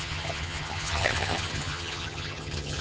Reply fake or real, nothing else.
fake